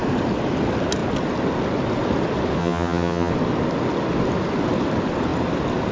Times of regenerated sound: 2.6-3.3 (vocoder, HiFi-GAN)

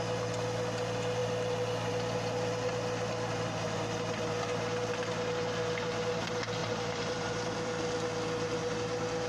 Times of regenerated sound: 1.2-1.9 (vocoder, BigVGAN v2); 6.6-7.8

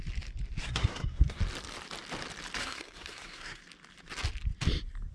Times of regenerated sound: 0.6-1.4 (codec, SNAC); 2.6-3.6

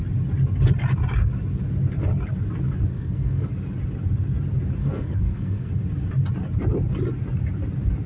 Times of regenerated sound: 2.9-3.5 (codec, SNAC); 4.8-5.7

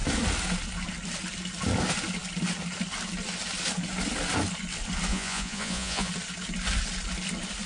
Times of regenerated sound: 5.1-6.1 (vocoder, Vocos)

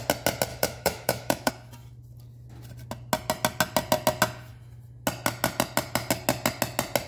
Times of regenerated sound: 0.5-1.5 (autoencoder, DAC-VAE)